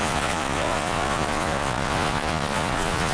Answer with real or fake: fake